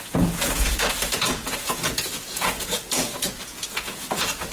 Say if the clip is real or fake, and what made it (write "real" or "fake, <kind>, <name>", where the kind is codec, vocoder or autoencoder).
fake, vocoder, Vocos